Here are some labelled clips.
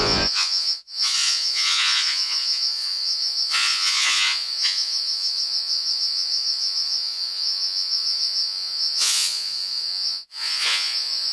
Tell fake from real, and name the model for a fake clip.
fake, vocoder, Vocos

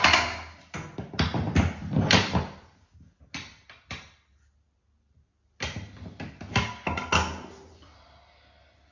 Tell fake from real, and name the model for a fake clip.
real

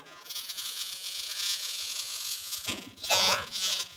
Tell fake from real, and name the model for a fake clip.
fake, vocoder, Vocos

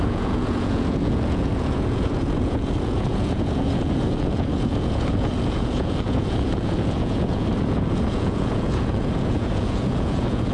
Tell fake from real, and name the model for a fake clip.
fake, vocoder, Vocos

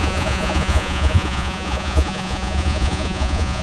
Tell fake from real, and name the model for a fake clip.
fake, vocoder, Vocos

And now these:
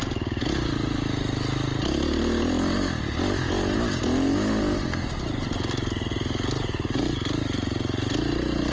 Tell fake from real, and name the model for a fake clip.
real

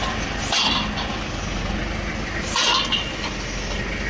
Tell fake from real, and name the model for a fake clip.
real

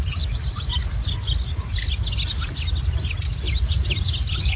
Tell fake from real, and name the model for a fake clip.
real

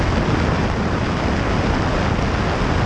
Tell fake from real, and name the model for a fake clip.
real